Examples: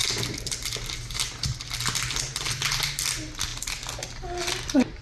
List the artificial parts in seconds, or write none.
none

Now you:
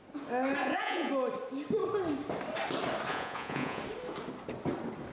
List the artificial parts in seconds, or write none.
0.6-1.1 (vocoder, Vocos); 3.1-3.8

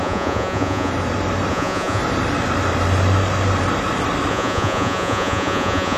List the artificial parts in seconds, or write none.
0.0-0.9 (vocoder, Vocos); 1.5-2.0; 4.3-6.0

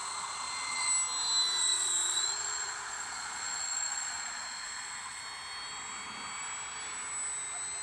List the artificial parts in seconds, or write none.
0.0-0.9 (vocoder, Vocos); 1.6-5.2

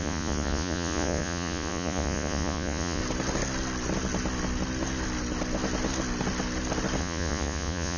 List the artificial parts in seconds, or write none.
0.0-3.0 (vocoder, Vocos); 7.0-8.0

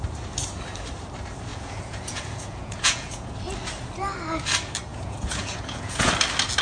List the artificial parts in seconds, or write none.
1.5-3.3 (vocoder, Vocos); 4.9-6.1

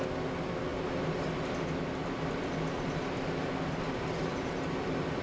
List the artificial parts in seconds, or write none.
none